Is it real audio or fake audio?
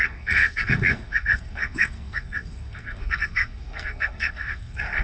fake